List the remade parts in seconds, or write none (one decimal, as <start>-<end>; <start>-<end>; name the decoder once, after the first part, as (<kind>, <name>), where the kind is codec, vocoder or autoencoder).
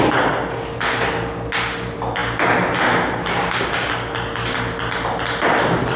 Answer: none